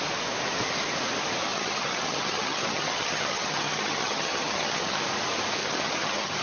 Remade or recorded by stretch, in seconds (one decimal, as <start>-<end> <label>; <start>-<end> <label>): 0.0-1.5 recorded; 1.5-5.0 remade; 5.0-5.6 recorded; 5.6-6.4 remade